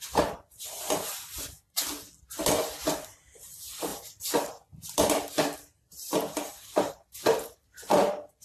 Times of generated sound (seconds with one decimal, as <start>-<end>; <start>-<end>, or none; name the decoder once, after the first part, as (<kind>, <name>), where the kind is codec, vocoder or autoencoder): 0.0-1.1 (vocoder, BigVGAN v2); 2.8-8.4